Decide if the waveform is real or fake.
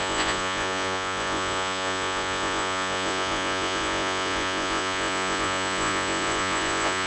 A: fake